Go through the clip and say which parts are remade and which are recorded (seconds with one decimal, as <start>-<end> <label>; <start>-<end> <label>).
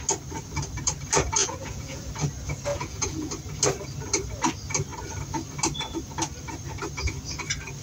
0.0-1.4 recorded; 1.4-2.0 remade; 2.0-2.7 recorded; 2.7-3.3 remade; 3.3-7.8 recorded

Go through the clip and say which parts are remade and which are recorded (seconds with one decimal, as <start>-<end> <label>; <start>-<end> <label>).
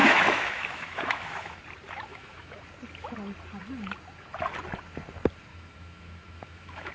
0.0-1.6 remade; 1.6-2.1 recorded; 2.1-2.6 remade; 2.6-5.5 recorded; 5.5-6.9 remade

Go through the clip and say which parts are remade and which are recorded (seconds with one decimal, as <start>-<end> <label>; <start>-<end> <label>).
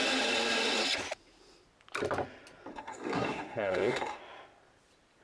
0.0-2.7 recorded; 2.7-4.2 remade; 4.2-5.2 recorded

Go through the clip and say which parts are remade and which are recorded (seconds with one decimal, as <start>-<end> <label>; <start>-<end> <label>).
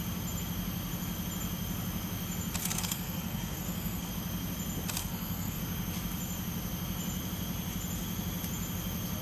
0.0-2.6 recorded; 2.6-4.1 remade; 4.1-5.0 recorded; 5.0-5.6 remade; 5.6-9.2 recorded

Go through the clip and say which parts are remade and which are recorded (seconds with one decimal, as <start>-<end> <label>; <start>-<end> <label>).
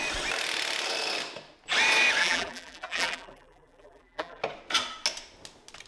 0.0-2.2 recorded; 2.2-4.4 remade; 4.4-5.9 recorded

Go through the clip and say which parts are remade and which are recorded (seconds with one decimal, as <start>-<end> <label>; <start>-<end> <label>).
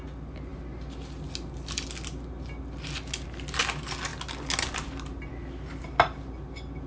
0.0-6.9 recorded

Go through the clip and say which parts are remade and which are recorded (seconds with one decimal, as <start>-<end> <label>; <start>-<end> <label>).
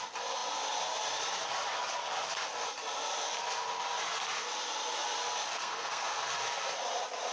0.0-5.5 recorded; 5.5-6.2 remade; 6.2-7.3 recorded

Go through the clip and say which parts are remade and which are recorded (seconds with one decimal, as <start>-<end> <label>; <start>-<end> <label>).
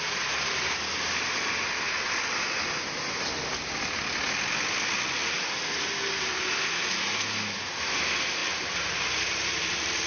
0.0-10.1 recorded